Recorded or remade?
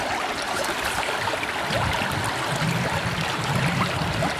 recorded